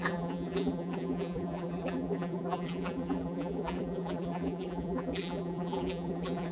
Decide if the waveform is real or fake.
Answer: fake